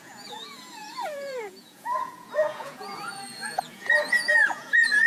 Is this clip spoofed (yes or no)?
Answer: yes